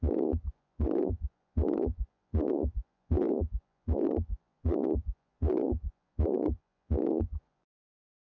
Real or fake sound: fake